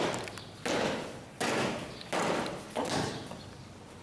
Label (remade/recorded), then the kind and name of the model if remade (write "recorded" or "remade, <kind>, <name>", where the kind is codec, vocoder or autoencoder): recorded